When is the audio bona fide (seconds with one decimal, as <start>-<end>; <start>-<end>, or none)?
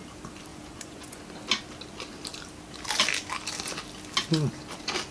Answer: 0.0-0.5; 1.2-5.1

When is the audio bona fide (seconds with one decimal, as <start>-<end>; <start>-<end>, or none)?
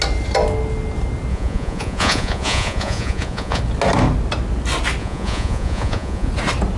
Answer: 0.0-1.3; 3.6-5.0; 6.3-6.8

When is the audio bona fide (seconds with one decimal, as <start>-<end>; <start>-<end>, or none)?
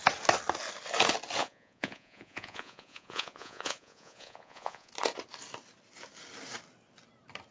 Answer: 0.0-1.4; 4.9-7.5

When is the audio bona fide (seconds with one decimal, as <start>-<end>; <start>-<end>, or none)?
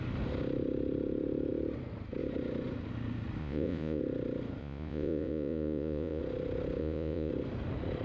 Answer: 0.0-3.4; 4.0-4.6; 6.2-6.8; 7.3-8.0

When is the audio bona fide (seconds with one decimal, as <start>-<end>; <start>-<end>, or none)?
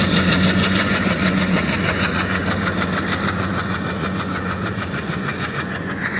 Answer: 2.4-3.3